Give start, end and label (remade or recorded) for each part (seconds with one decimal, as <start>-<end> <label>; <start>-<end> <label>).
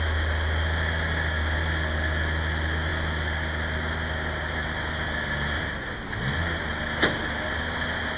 0.0-8.2 recorded